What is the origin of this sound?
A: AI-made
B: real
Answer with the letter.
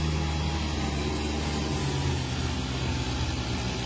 B